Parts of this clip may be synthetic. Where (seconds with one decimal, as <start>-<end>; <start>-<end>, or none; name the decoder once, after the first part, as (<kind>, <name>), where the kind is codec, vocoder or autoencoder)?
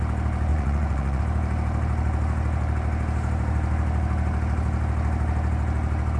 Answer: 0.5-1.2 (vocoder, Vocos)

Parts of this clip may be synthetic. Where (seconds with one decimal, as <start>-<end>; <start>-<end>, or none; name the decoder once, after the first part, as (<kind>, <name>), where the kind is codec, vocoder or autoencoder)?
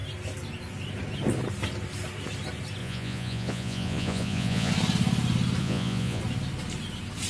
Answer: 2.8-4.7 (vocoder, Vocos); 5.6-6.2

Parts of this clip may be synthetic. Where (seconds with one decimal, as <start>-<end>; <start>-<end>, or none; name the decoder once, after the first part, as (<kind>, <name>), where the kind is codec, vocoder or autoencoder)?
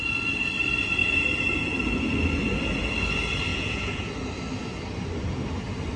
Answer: 3.5-4.1 (vocoder, Vocos)